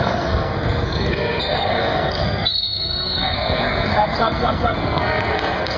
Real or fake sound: fake